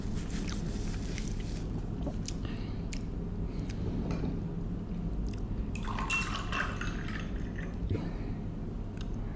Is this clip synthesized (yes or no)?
no